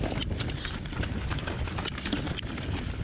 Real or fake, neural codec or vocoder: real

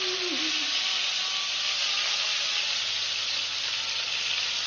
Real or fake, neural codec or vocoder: real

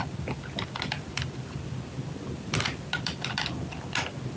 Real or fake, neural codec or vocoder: real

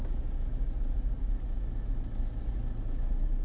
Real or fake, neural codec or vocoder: real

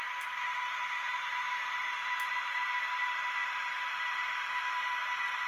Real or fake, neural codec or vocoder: real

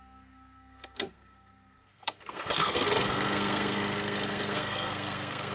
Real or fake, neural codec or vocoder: fake, codec, SNAC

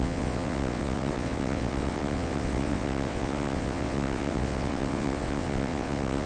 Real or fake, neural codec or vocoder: fake, vocoder, WaveNeXt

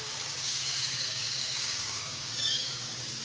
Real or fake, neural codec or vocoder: fake, codec, DAC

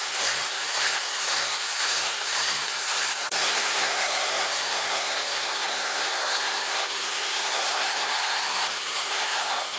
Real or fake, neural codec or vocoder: fake, codec, SNAC